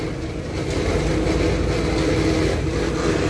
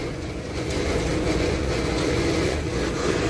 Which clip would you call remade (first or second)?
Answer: second